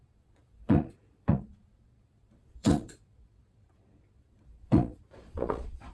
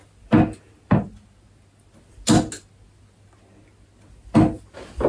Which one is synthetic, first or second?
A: first